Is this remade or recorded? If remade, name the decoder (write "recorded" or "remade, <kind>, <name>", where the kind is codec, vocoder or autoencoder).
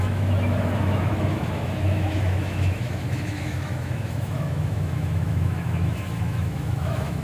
remade, autoencoder, DAC-VAE